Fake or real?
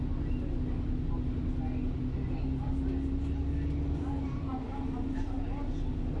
real